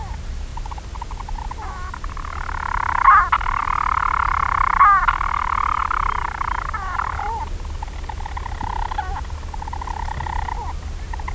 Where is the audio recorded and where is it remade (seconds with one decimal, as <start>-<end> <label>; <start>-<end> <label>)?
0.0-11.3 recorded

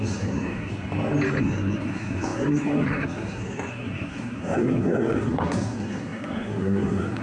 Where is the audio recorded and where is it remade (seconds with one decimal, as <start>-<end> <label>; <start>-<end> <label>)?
0.0-0.7 remade; 0.7-1.4 recorded; 1.4-7.2 remade

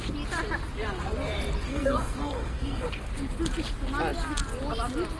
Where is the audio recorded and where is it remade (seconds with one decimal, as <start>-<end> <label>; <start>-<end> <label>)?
0.0-1.7 recorded; 1.7-3.1 remade; 3.1-5.2 recorded